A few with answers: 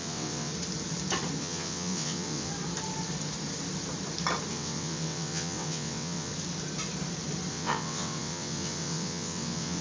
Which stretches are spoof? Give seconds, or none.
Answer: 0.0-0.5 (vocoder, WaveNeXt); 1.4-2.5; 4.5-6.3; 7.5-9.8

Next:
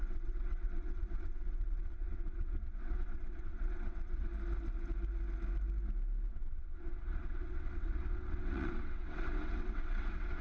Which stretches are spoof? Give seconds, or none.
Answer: 0.0-4.3 (vocoder, WaveNeXt); 6.3-10.4

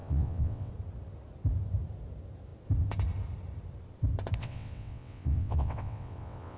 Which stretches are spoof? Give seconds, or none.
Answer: 0.0-0.7 (vocoder, WaveNeXt); 4.4-6.6

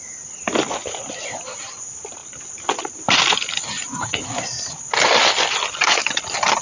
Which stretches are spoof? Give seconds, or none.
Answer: none

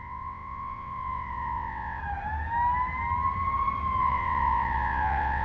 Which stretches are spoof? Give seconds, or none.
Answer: 0.0-2.0 (vocoder, WaveNeXt); 4.0-5.4

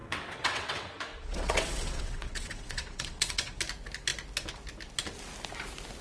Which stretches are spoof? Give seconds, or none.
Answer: 0.0-3.6 (vocoder, WaveNeXt)

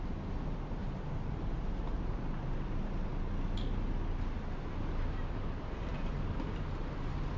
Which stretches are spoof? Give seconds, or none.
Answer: none

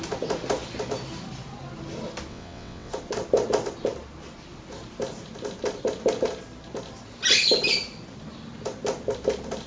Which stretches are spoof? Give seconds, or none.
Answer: 2.3-2.9 (vocoder, WaveNeXt)